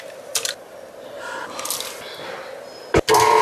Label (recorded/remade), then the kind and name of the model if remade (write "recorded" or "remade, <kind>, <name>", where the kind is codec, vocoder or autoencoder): recorded